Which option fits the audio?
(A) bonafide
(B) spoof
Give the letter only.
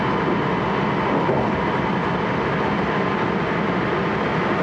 A